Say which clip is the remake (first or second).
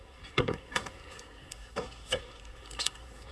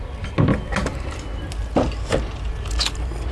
first